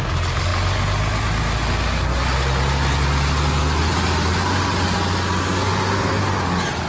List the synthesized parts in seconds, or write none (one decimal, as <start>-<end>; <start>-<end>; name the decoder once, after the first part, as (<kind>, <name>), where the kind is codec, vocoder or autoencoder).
none

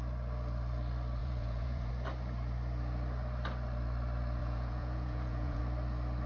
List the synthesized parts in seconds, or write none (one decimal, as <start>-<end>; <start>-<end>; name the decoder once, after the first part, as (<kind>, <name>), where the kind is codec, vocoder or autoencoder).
1.2-1.9 (vocoder, Vocos); 4.4-5.6

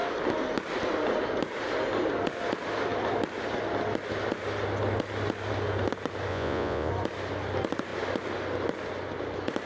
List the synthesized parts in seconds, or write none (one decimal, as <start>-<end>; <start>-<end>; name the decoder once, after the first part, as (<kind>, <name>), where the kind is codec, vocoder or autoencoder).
6.3-6.9 (vocoder, Vocos)

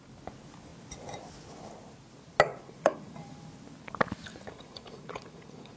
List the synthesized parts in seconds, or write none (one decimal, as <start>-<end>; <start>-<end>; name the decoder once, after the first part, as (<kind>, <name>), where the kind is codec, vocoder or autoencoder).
2.5-3.4 (vocoder, Vocos); 4.3-5.8

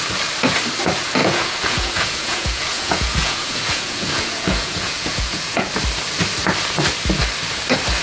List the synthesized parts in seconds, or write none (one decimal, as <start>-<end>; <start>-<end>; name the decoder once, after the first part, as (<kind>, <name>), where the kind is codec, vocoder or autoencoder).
1.2-5.7 (vocoder, Vocos)

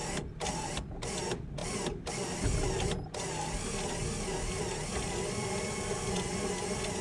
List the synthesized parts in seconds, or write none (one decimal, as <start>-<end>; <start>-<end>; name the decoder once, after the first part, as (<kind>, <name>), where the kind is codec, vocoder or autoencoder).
none

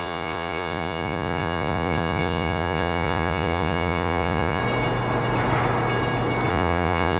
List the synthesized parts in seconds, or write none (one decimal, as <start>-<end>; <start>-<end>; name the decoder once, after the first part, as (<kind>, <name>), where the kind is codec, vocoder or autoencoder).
0.0-4.6 (vocoder, Vocos); 6.5-7.2

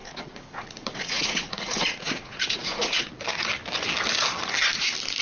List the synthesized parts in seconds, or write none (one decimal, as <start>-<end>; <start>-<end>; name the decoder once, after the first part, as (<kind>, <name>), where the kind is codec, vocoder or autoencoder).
0.0-3.1 (vocoder, Vocos)